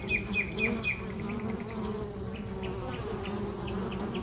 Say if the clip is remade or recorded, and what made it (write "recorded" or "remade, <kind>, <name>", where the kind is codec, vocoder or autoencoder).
recorded